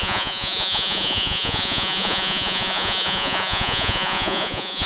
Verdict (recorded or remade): remade